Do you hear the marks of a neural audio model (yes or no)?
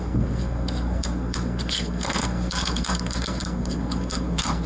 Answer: yes